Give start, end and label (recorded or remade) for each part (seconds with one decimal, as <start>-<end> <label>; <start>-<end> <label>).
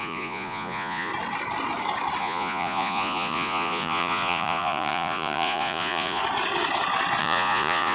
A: 0.0-1.1 remade; 1.1-2.2 recorded; 2.2-6.2 remade; 6.2-7.2 recorded; 7.2-7.9 remade